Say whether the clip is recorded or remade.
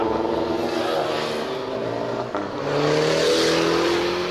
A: recorded